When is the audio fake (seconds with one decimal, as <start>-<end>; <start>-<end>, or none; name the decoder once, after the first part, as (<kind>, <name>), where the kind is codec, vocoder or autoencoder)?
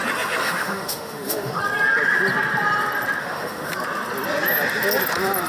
0.4-1.6 (autoencoder, DAC-VAE); 3.2-3.7